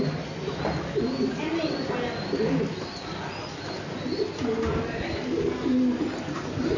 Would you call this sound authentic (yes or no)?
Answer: yes